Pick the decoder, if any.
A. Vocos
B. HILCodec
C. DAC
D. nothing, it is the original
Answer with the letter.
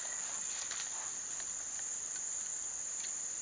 D